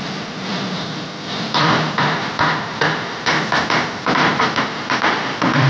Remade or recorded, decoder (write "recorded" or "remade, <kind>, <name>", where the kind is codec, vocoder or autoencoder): remade, vocoder, BigVGAN v2